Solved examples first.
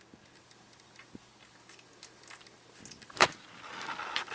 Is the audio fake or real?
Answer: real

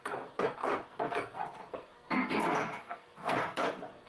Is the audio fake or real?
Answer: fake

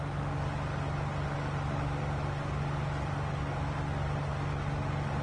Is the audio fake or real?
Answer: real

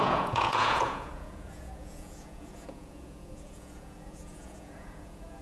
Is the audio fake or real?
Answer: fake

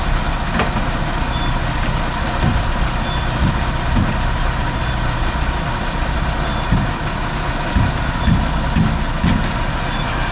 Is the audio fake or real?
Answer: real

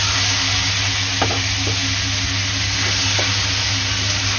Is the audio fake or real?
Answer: real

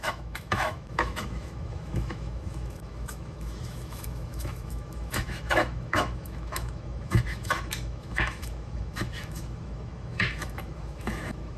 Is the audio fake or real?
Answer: fake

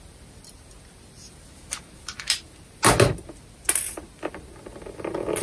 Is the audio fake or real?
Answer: real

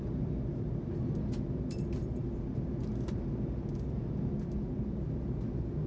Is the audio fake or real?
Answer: real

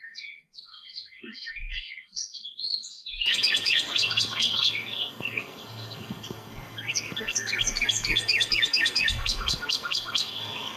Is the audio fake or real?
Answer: fake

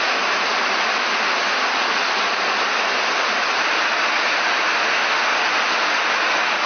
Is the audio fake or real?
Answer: real